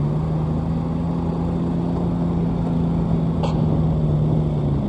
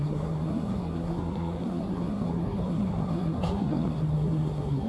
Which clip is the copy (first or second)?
second